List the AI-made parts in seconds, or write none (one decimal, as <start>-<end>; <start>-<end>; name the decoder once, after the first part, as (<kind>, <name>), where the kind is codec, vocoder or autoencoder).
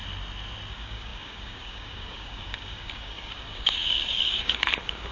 0.7-5.1 (codec, DAC)